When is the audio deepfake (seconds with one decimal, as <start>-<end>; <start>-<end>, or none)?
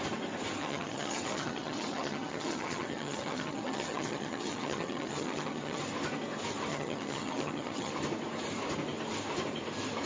0.6-5.8; 6.7-7.9